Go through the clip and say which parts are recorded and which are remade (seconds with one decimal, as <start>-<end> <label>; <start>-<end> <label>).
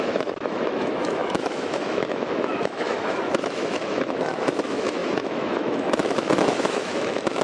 0.0-7.4 remade